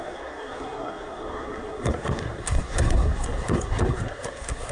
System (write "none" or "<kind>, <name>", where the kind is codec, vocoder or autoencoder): codec, SNAC